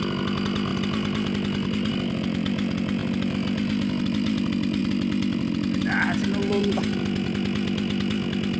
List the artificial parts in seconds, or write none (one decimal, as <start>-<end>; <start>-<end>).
none